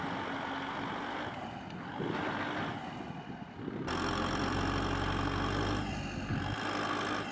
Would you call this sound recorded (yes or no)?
yes